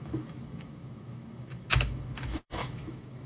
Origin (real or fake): fake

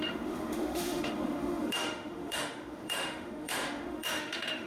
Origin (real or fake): fake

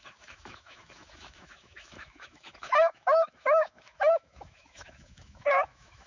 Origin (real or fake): fake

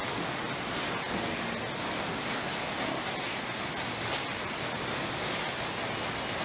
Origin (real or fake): real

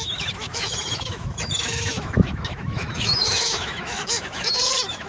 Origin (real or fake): fake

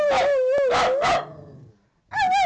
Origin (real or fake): real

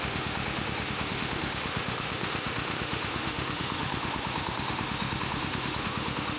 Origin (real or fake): fake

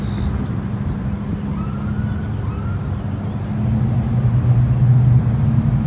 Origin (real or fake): real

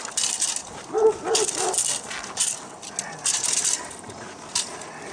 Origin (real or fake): real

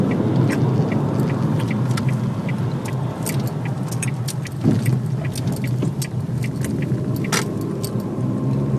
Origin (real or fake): real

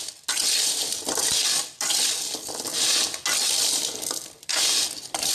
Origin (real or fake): real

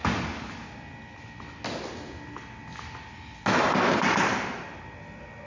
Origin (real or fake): real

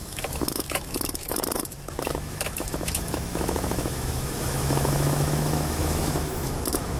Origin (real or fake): fake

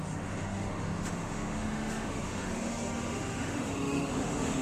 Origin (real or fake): fake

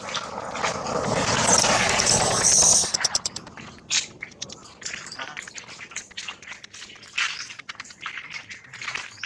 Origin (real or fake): real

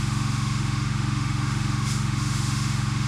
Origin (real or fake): fake